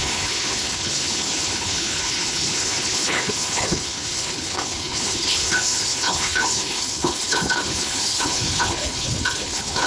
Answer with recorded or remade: remade